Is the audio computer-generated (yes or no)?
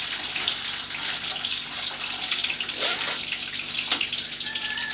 no